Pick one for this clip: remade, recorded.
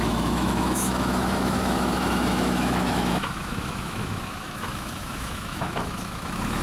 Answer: remade